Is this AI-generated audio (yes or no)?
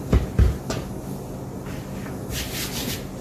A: no